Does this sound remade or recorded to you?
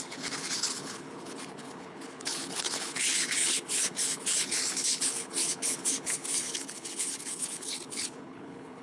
remade